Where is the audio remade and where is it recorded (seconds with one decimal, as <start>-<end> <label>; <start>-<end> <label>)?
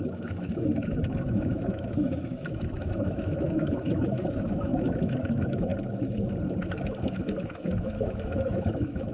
0.0-5.7 remade; 5.7-6.6 recorded; 6.6-9.1 remade